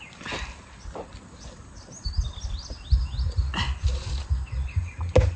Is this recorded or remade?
recorded